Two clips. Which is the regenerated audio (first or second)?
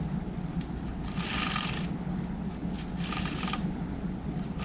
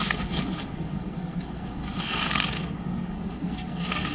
second